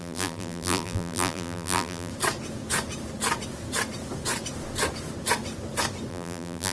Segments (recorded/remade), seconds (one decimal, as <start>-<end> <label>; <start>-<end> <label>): 0.0-2.1 remade; 2.1-6.1 recorded; 6.1-6.7 remade